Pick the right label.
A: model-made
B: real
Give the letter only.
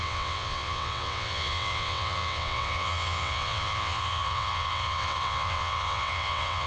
A